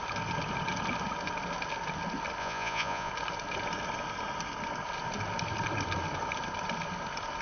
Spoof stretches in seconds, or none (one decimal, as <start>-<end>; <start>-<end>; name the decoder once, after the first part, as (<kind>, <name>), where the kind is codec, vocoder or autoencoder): 2.4-3.1 (vocoder, Vocos)